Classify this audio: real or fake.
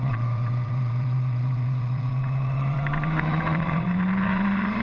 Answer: fake